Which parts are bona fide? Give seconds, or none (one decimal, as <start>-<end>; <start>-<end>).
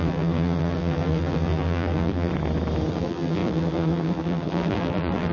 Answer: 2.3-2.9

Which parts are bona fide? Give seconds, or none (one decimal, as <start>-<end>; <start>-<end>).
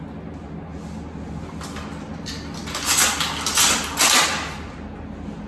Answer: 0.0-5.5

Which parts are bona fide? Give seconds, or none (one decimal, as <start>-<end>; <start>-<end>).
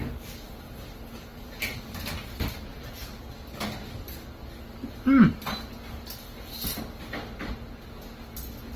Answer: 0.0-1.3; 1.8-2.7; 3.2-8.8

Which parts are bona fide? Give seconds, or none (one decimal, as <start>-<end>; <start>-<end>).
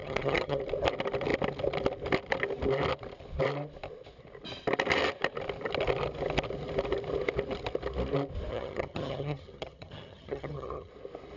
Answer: 0.6-8.5; 10.9-11.4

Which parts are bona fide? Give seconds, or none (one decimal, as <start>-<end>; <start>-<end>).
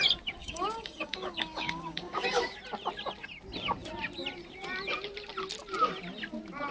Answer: 0.0-0.4; 2.6-6.7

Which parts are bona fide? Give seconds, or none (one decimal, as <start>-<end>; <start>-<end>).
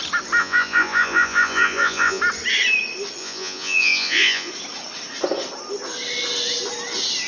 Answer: 0.0-0.4; 2.2-3.2; 4.5-7.3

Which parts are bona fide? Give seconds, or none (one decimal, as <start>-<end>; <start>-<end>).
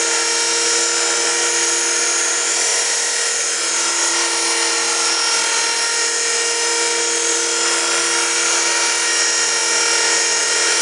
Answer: 0.0-10.8